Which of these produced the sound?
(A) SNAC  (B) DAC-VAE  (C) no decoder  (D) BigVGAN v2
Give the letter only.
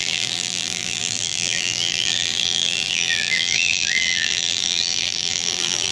D